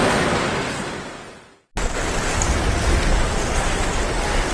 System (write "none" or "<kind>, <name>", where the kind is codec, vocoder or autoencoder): none